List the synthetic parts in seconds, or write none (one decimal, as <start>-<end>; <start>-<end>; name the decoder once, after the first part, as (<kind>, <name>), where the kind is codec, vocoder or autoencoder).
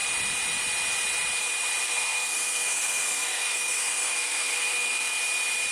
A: 1.8-5.2 (codec, SNAC)